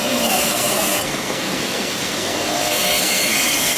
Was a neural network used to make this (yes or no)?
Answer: yes